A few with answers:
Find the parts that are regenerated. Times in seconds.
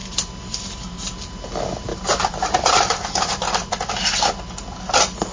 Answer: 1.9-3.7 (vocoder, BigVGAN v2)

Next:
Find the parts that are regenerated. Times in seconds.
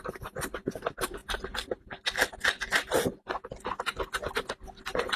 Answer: none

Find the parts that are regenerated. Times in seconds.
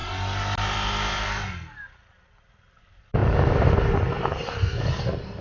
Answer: 2.8-3.2 (vocoder, BigVGAN v2); 4.1-5.4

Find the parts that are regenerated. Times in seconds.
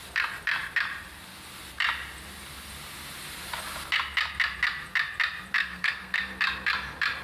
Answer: 5.6-6.2 (codec, SNAC)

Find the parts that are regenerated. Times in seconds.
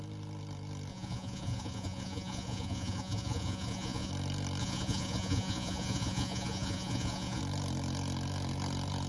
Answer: 0.9-4.1 (vocoder, Vocos); 4.6-7.4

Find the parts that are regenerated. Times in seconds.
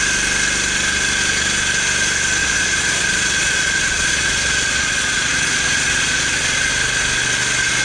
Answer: 2.4-6.7 (vocoder, Vocos)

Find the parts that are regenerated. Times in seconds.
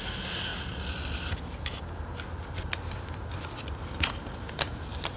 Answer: 0.5-3.3 (vocoder, BigVGAN v2)